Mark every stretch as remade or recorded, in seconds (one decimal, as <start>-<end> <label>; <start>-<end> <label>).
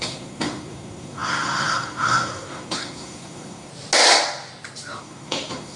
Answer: 0.0-3.7 remade; 3.7-5.0 recorded; 5.0-5.8 remade